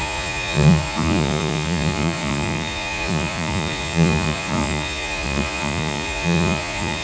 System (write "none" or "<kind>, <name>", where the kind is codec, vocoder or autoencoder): vocoder, Vocos